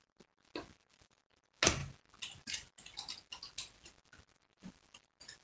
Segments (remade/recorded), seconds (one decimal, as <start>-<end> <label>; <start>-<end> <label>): 0.0-5.4 recorded